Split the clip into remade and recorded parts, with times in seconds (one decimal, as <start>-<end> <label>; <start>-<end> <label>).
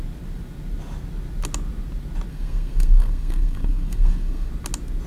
0.0-2.3 recorded; 2.3-4.5 remade; 4.5-5.1 recorded